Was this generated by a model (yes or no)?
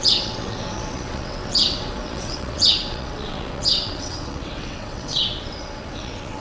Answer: yes